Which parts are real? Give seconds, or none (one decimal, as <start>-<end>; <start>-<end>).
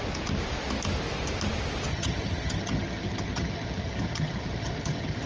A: 0.0-1.9